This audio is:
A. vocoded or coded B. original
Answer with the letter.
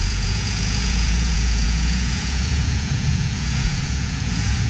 A